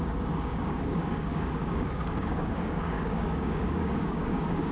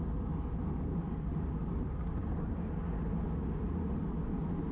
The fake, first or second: first